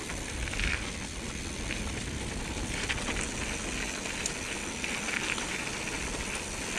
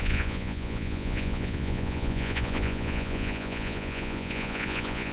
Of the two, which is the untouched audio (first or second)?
first